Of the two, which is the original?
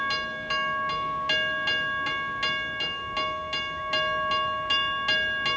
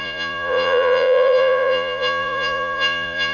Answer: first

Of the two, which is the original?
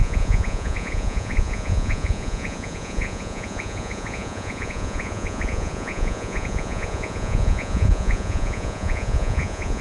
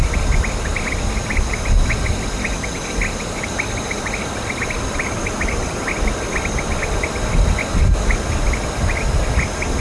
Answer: second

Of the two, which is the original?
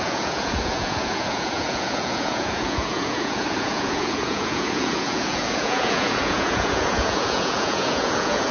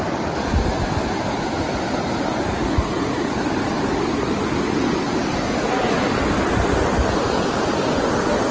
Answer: second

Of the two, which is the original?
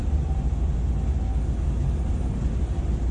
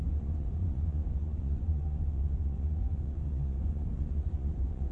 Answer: first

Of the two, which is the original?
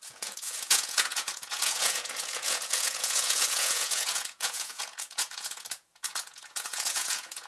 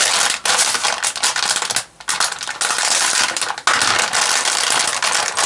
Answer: second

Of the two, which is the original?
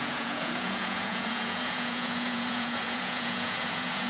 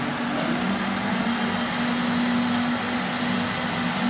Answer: second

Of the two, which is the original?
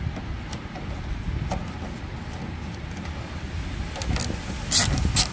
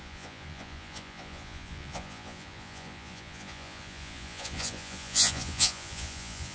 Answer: first